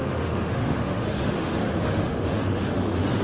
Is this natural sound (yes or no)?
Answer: no